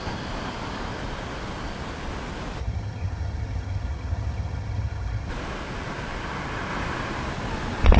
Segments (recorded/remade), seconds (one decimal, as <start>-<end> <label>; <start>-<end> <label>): 0.0-2.6 recorded; 2.6-5.3 remade; 5.3-8.0 recorded